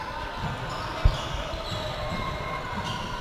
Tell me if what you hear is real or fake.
real